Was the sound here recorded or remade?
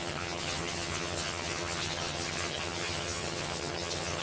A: remade